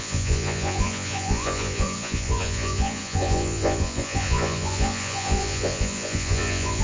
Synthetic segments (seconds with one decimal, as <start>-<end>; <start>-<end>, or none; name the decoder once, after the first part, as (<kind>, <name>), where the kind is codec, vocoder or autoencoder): 0.0-6.8 (vocoder, Vocos)